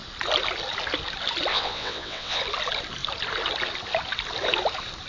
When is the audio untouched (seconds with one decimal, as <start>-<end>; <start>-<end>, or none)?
0.0-1.5; 2.4-5.1